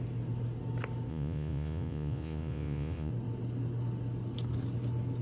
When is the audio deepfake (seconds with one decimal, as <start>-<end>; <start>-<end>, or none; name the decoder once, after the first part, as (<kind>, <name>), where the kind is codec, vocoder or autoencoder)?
1.1-3.1 (vocoder, Vocos)